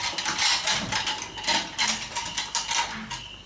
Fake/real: real